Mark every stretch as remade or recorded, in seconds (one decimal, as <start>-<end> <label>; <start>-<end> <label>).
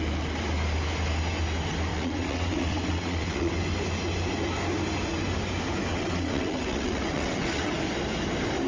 0.0-1.9 recorded; 1.9-3.5 remade; 3.5-5.9 recorded; 5.9-7.7 remade; 7.7-8.7 recorded